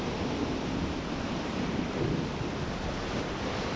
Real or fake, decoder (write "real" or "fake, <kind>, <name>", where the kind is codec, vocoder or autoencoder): real